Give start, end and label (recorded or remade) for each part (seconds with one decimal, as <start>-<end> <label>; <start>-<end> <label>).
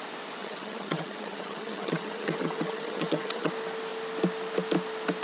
0.0-0.4 recorded; 0.4-3.5 remade; 3.5-5.2 recorded